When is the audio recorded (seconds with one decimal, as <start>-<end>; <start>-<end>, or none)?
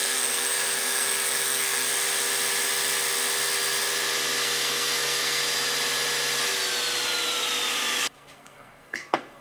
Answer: 1.9-4.4; 5.4-8.0